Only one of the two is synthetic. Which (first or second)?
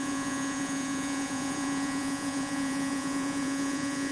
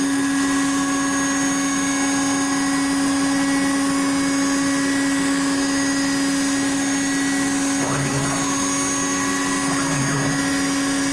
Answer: first